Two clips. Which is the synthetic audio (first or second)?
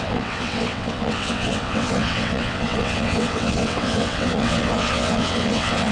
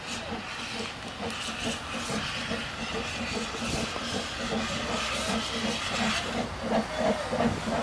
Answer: first